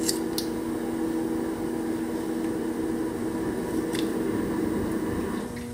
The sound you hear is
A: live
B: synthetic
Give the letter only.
A